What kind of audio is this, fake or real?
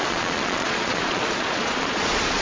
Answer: fake